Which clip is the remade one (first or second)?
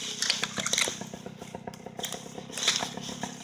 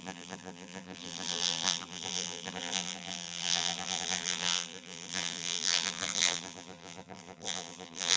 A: second